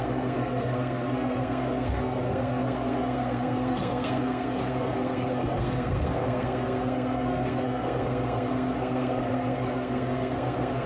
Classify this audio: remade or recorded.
remade